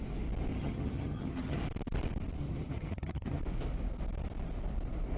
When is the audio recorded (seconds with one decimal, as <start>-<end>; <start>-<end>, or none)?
0.0-0.5; 1.6-2.4; 3.4-5.2

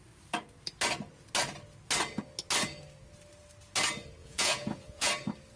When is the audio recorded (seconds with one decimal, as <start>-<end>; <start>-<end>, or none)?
0.0-4.2; 5.1-5.6

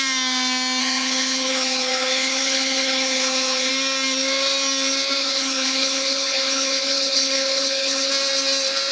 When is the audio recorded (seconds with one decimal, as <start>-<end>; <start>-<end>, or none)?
0.0-0.8; 3.7-5.2; 8.1-8.9

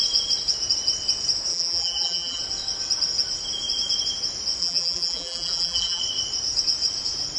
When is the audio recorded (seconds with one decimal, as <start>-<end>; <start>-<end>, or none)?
0.0-1.5; 2.4-4.6; 6.0-7.4

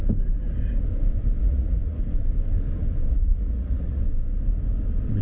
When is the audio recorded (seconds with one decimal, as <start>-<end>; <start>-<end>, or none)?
0.0-1.4; 2.0-3.1; 4.0-5.2